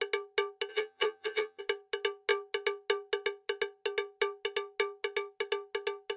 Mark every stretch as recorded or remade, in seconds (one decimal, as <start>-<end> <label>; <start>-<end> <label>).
0.0-0.7 recorded; 0.7-1.6 remade; 1.6-6.2 recorded

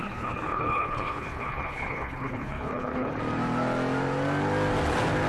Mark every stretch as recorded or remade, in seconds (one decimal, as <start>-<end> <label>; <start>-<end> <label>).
0.0-3.2 remade; 3.2-5.3 recorded

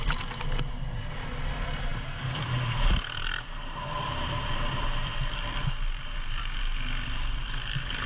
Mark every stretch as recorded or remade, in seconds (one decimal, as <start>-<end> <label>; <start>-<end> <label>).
0.0-8.1 recorded

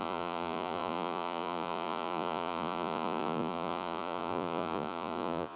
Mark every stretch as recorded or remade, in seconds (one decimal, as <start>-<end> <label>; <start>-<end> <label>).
0.0-5.6 remade